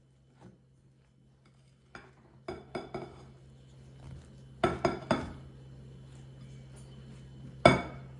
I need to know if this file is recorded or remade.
recorded